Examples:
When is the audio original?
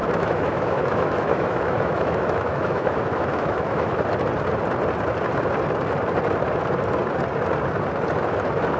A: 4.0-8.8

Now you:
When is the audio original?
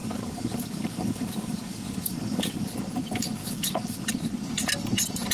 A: 2.7-3.4; 4.1-5.3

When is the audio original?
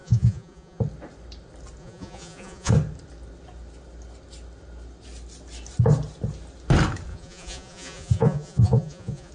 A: 0.8-1.8; 2.7-7.1